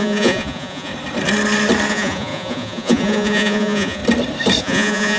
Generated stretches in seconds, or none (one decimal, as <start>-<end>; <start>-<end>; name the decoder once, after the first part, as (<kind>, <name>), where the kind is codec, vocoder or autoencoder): 0.0-0.9 (vocoder, Vocos); 1.9-4.0; 4.6-5.2